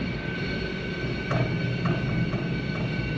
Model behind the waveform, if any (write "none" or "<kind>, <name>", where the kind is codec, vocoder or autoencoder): none